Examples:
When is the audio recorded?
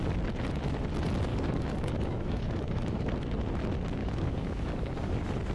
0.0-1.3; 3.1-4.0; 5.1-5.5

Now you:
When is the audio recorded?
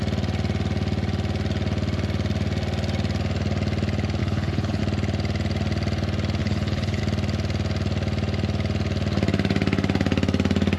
0.0-4.2; 4.8-6.4; 7.0-10.8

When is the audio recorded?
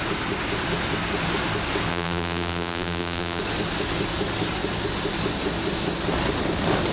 0.0-1.9; 3.4-6.9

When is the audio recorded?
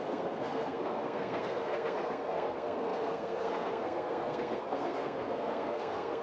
none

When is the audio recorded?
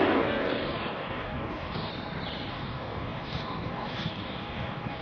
1.9-2.5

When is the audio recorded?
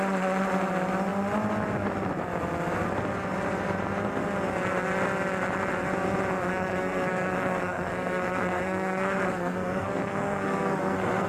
0.0-6.5